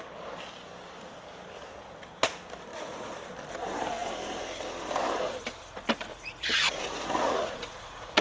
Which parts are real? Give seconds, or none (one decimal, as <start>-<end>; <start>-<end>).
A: 0.0-2.7; 3.3-6.1